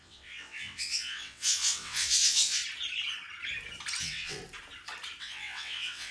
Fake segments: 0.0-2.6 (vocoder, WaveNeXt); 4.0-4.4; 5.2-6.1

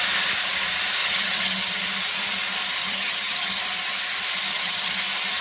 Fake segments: 1.0-1.7 (vocoder, HiFi-GAN); 2.8-3.6; 4.5-5.0

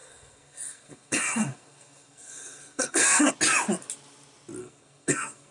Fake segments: 0.0-3.3 (codec, SNAC); 4.6-5.5